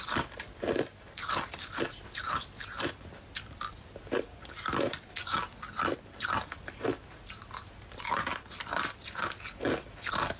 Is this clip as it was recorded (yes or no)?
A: yes